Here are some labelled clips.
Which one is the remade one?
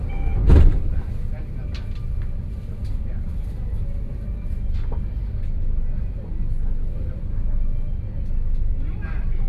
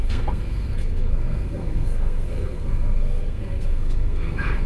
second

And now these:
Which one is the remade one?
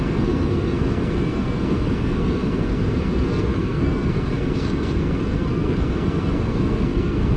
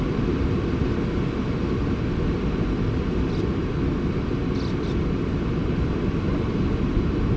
first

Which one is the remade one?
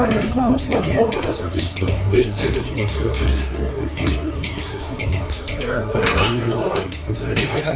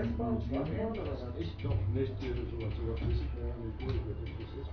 first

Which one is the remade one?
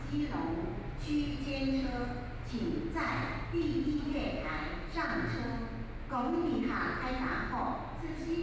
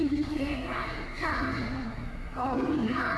second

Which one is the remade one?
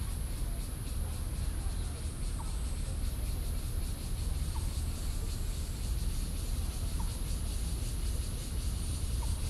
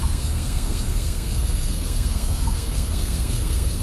second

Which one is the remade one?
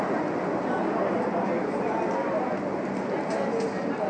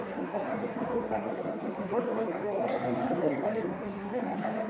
second